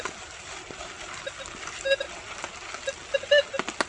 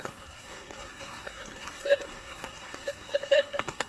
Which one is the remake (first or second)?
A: second